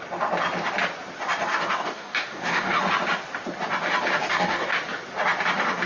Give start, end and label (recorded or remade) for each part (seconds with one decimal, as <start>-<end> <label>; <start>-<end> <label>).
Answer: 0.0-1.5 recorded; 1.5-2.8 remade; 2.8-4.2 recorded; 4.2-4.7 remade; 4.7-5.9 recorded